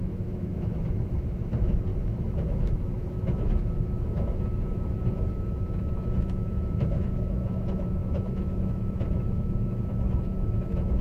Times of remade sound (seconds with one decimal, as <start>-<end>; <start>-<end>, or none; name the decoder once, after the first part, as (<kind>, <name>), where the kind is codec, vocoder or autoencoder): 0.0-11.0 (autoencoder, DAC-VAE)